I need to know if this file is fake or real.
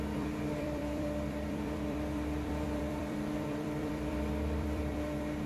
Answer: fake